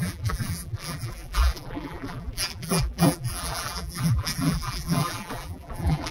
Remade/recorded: remade